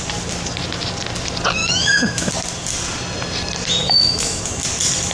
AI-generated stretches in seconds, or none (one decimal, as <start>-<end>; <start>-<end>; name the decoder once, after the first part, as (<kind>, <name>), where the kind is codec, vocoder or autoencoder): 1.6-2.3 (autoencoder, DAC-VAE); 3.8-4.4